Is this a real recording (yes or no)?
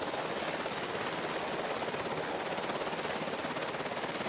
yes